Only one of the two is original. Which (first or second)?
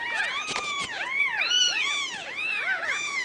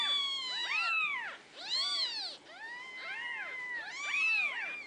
second